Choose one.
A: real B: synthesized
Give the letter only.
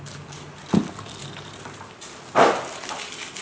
A